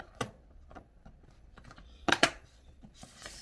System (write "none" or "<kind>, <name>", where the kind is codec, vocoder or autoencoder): vocoder, Vocos